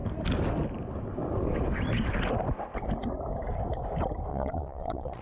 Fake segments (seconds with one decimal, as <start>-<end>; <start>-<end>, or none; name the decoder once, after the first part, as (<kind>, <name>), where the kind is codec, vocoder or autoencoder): 4.3-5.2 (vocoder, WaveNeXt)